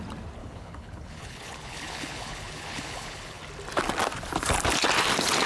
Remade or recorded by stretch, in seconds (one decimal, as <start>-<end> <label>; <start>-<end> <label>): 0.0-0.4 recorded; 0.4-3.4 remade; 3.4-5.5 recorded